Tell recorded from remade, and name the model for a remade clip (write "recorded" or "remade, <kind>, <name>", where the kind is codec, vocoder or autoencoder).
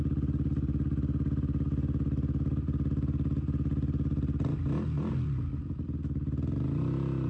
recorded